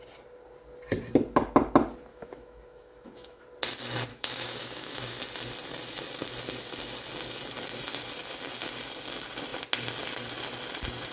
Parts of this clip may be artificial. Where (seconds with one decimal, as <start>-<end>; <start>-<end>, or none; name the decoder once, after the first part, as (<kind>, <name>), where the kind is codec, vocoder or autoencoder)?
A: 2.1-3.4 (autoencoder, DAC-VAE); 4.1-5.2